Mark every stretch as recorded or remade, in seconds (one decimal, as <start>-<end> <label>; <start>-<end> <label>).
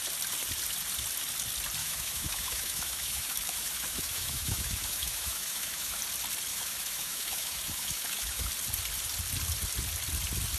0.0-1.8 recorded; 1.8-6.0 remade; 6.0-6.5 recorded; 6.5-8.5 remade; 8.5-10.6 recorded